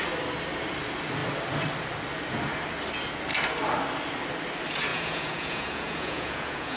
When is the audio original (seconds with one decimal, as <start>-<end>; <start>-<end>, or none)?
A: 0.0-4.9